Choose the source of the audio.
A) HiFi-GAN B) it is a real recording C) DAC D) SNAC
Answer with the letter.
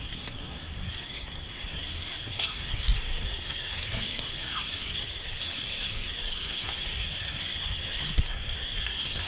D